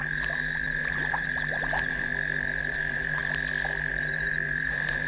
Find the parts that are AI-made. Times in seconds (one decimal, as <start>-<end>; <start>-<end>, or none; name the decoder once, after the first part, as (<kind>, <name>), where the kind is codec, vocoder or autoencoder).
0.0-2.1 (vocoder, BigVGAN v2); 2.7-3.2; 3.9-5.1